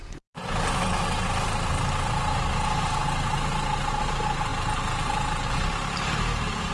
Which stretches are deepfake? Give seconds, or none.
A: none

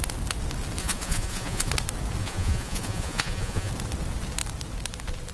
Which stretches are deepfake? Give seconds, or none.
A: 0.8-1.7 (vocoder, Vocos); 2.2-3.7